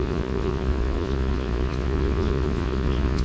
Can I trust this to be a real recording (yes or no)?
no